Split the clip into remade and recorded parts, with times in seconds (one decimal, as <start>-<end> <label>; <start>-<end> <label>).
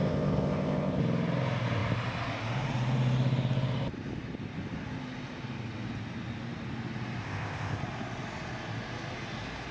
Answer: 0.0-1.0 remade; 1.0-7.2 recorded; 7.2-7.8 remade; 7.8-9.7 recorded